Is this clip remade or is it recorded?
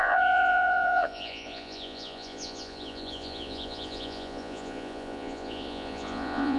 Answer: remade